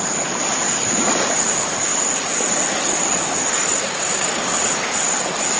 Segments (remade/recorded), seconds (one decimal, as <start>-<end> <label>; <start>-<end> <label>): 0.0-3.8 recorded; 3.8-4.5 remade; 4.5-5.6 recorded